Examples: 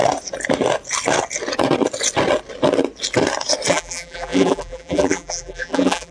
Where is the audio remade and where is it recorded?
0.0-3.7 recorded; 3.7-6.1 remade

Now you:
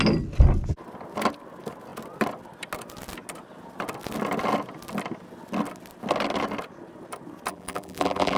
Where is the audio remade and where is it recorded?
0.0-7.5 recorded; 7.5-8.4 remade

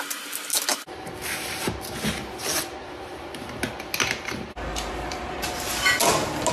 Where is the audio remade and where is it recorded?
0.0-0.7 recorded; 0.7-1.7 remade; 1.7-4.7 recorded; 4.7-5.3 remade; 5.3-6.5 recorded

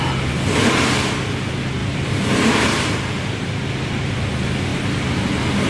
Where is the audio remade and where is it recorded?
0.0-1.8 recorded; 1.8-3.4 remade; 3.4-5.7 recorded